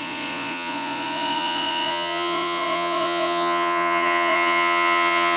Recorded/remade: remade